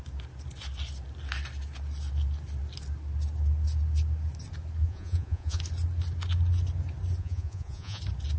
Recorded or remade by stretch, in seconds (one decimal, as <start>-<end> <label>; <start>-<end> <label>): 0.0-4.8 recorded; 4.8-5.6 remade; 5.6-7.2 recorded; 7.2-8.0 remade; 8.0-8.4 recorded

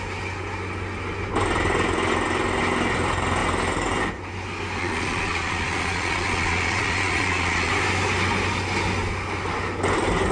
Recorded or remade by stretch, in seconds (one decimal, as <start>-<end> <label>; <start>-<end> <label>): 0.0-4.8 recorded; 4.8-7.7 remade; 7.7-10.3 recorded